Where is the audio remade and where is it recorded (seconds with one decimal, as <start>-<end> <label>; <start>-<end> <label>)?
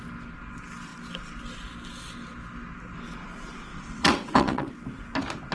0.0-3.7 recorded; 3.7-4.7 remade; 4.7-5.5 recorded